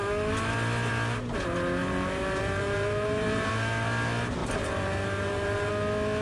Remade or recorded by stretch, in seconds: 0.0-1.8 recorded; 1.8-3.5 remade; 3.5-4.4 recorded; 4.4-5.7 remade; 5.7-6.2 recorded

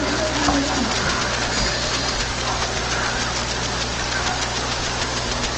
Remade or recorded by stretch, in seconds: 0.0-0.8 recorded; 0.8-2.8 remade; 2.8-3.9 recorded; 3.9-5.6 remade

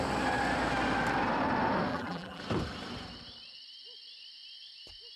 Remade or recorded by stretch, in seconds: 0.0-1.9 recorded; 1.9-2.4 remade; 2.4-5.2 recorded

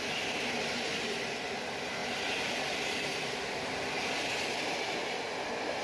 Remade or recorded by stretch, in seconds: 0.0-2.0 recorded; 2.0-3.0 remade; 3.0-5.8 recorded